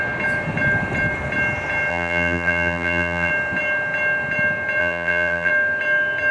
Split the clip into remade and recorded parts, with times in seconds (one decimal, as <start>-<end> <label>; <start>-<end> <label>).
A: 0.0-1.9 recorded; 1.9-3.3 remade; 3.3-4.8 recorded; 4.8-5.5 remade; 5.5-6.3 recorded